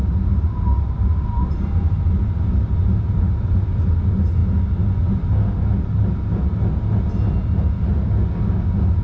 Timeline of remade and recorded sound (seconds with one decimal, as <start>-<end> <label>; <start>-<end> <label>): 0.0-3.9 remade; 3.9-9.0 recorded